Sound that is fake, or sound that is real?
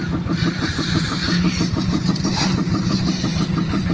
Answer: real